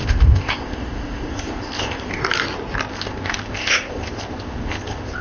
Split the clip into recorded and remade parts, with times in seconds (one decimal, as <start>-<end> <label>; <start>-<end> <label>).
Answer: 0.0-2.2 remade; 2.2-2.9 recorded; 2.9-5.2 remade